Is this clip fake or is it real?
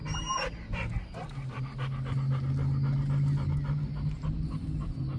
real